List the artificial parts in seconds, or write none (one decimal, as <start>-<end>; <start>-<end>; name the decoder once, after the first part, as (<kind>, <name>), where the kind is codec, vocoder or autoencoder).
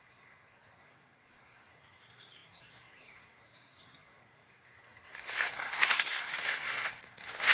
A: 0.0-7.5 (codec, SNAC)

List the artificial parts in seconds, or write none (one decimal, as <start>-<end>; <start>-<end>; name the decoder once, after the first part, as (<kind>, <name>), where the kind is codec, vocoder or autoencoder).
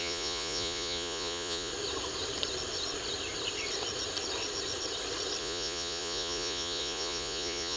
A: 0.0-1.7 (vocoder, Vocos); 5.4-7.8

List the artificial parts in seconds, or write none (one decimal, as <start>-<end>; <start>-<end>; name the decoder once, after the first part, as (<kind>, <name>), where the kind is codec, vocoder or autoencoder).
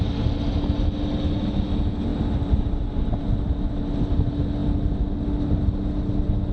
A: none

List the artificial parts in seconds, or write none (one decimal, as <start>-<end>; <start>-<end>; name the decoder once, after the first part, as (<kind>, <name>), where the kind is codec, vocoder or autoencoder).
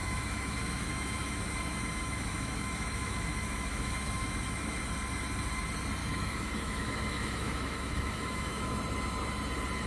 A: 0.0-4.8 (autoencoder, DAC-VAE); 6.0-8.8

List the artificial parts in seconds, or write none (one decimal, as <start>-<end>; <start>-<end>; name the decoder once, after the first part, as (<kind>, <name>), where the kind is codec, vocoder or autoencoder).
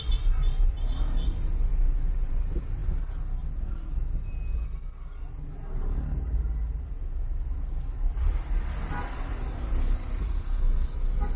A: none